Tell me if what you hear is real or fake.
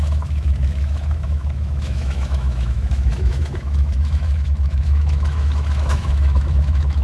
fake